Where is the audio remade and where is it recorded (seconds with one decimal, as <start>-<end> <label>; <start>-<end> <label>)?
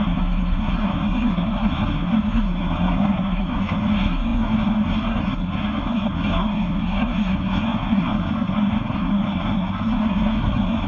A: 0.0-10.9 remade